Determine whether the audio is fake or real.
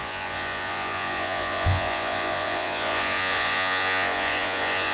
fake